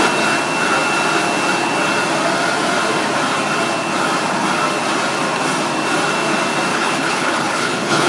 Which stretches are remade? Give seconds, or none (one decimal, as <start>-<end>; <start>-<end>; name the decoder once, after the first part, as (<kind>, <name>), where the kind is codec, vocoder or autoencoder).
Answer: 6.7-8.1 (codec, HILCodec)